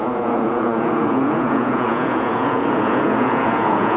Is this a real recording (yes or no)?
no